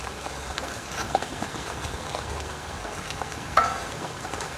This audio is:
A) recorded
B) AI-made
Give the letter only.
B